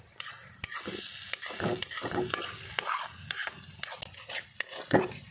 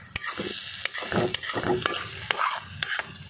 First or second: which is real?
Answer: second